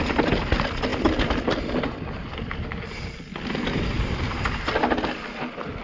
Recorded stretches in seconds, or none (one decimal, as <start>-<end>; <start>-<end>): 0.0-5.8